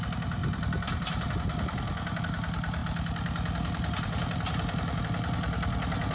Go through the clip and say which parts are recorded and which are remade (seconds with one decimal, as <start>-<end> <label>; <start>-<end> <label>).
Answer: 0.0-6.1 recorded